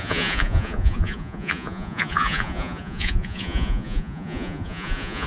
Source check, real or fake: fake